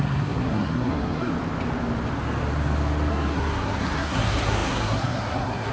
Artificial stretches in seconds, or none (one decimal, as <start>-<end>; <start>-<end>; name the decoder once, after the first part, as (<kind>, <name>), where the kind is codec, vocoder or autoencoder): 0.0-1.3 (codec, SNAC); 3.1-5.7